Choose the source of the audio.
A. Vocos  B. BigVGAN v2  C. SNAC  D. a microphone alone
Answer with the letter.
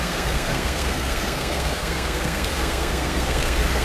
C